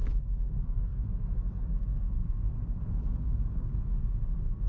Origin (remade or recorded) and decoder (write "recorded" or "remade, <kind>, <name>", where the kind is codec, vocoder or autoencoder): remade, codec, SNAC